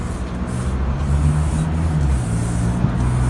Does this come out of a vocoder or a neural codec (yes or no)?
no